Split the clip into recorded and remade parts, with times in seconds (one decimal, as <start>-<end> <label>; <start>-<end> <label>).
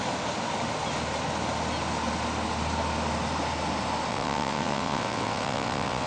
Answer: 0.0-4.1 recorded; 4.1-6.1 remade